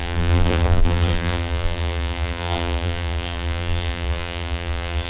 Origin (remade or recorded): remade